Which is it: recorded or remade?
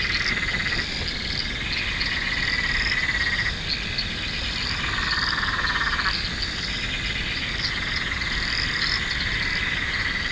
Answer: recorded